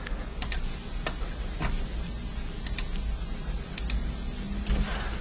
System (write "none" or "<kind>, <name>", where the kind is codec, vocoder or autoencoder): none